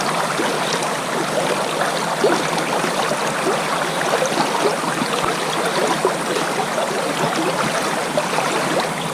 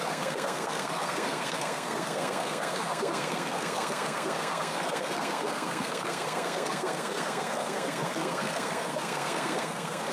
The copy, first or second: second